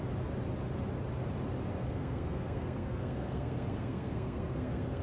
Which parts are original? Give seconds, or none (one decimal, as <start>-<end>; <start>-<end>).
0.0-1.8